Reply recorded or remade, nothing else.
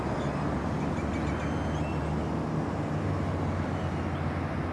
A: recorded